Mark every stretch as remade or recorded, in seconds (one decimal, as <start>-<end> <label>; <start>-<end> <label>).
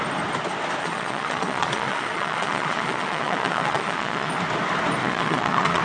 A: 0.0-0.8 recorded; 0.8-4.3 remade; 4.3-5.0 recorded; 5.0-5.8 remade